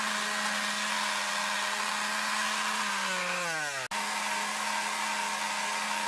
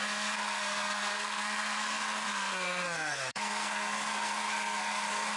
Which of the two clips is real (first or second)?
first